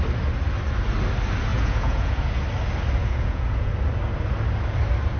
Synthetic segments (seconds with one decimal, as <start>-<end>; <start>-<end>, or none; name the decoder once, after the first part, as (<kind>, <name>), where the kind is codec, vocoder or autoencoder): 1.5-2.3 (vocoder, Vocos); 3.0-3.7